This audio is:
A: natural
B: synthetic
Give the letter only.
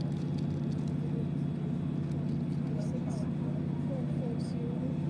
A